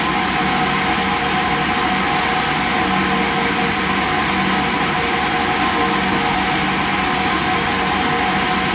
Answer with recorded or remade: recorded